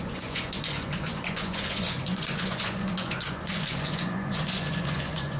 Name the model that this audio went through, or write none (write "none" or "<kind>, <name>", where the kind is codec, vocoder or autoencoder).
vocoder, Vocos